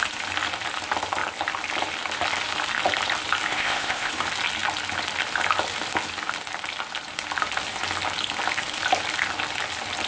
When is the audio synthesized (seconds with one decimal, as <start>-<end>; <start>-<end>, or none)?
3.5-4.1